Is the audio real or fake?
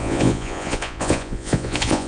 fake